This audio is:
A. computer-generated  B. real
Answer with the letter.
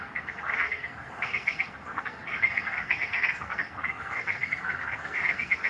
A